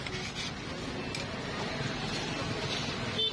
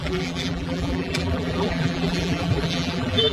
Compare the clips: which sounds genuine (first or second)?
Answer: first